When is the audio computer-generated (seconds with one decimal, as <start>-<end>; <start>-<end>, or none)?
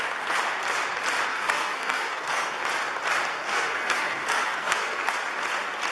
1.3-2.6; 3.3-5.1